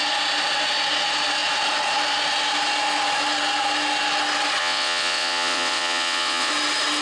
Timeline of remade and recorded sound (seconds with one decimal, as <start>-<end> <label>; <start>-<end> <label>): 0.0-4.6 recorded; 4.6-6.5 remade; 6.5-7.0 recorded